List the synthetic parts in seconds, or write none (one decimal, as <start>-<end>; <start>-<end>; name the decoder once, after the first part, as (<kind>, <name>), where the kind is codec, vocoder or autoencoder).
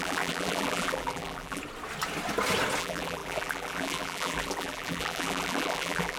0.0-1.6 (vocoder, BigVGAN v2); 2.8-6.2